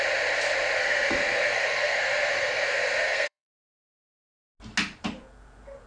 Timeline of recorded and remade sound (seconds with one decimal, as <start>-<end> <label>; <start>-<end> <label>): 0.0-0.8 recorded; 0.8-4.3 remade; 4.3-5.9 recorded